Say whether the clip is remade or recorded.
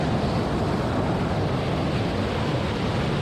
recorded